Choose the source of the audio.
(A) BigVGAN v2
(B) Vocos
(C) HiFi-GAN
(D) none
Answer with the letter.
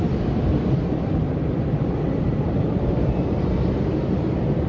A